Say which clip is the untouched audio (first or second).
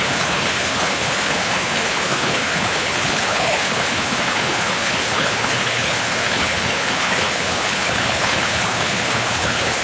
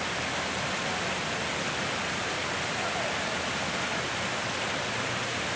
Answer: second